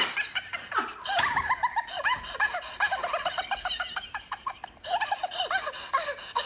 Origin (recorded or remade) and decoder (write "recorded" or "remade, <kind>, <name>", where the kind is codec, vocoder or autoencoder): recorded